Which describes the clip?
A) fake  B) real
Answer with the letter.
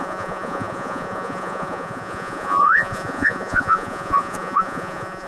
A